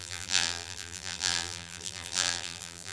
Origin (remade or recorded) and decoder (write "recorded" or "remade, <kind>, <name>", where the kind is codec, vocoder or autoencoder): remade, vocoder, BigVGAN v2